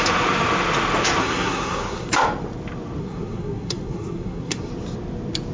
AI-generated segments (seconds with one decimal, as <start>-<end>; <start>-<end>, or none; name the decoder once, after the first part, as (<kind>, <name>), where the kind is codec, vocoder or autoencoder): 1.2-2.1 (codec, SNAC); 3.0-4.7

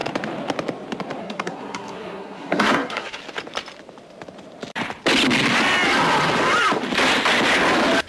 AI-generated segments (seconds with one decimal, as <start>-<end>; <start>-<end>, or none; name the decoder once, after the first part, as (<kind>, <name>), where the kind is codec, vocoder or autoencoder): 1.2-3.2 (codec, SNAC)

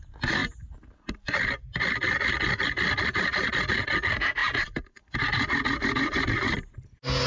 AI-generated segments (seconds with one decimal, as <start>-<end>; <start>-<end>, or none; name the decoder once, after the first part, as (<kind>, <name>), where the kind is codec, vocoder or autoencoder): none

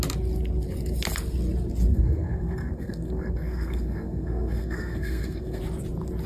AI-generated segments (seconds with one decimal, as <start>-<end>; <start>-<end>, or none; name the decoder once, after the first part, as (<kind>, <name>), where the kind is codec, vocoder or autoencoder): 1.9-5.6 (codec, SNAC)

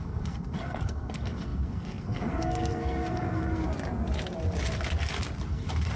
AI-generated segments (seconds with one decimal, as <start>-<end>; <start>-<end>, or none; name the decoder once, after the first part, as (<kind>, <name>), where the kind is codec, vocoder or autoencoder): 0.0-3.7 (codec, SNAC); 5.5-6.0